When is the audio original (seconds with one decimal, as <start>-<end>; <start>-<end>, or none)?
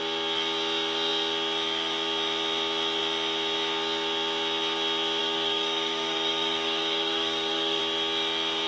0.0-5.2; 7.8-8.7